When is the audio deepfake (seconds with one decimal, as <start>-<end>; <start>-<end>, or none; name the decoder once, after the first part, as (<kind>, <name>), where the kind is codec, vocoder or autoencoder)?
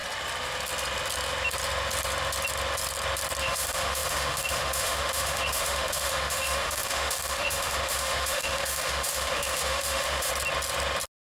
3.4-10.3 (autoencoder, DAC-VAE)